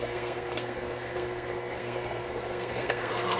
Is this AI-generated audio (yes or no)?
yes